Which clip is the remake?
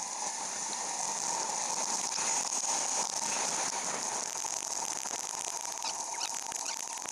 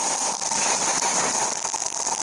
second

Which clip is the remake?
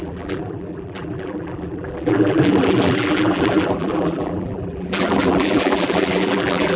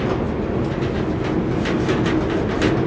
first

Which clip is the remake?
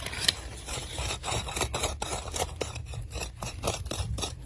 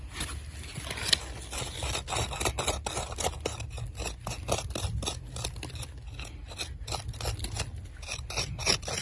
first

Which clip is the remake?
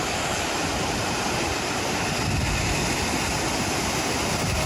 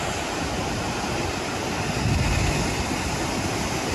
first